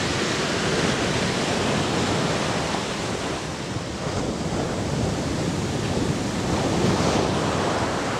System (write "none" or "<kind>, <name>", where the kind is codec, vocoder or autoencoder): none